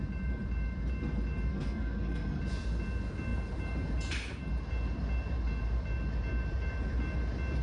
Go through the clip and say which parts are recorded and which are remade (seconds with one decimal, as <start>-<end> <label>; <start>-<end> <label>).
0.0-1.5 recorded; 1.5-2.4 remade; 2.4-7.6 recorded